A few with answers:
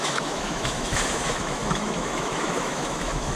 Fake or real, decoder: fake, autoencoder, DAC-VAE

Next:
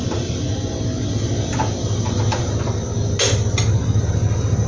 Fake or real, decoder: real